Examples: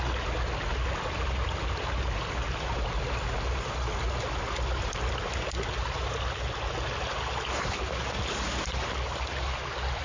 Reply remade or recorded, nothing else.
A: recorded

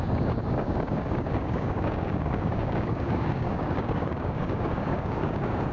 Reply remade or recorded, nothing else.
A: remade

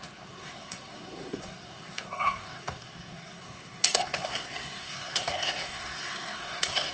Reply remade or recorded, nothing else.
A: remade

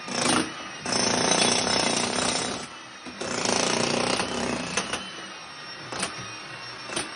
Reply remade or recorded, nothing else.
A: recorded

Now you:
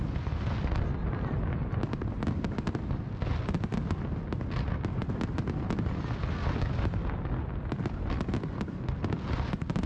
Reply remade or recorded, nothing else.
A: recorded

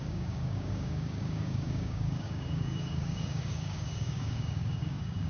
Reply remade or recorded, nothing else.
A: remade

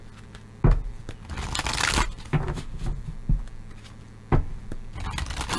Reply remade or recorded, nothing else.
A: recorded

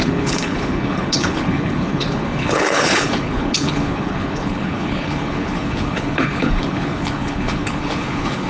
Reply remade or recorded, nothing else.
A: remade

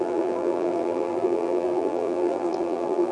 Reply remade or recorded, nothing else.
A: remade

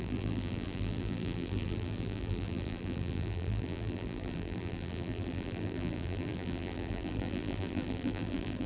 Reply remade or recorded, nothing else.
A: remade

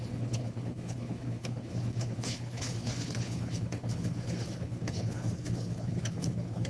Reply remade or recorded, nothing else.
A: remade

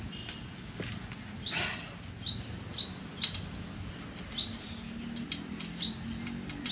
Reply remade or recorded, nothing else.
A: recorded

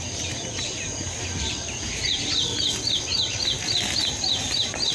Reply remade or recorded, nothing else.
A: remade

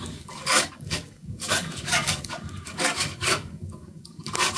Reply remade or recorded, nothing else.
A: remade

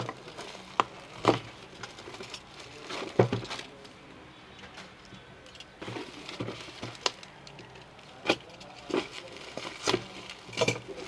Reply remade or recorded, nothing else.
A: recorded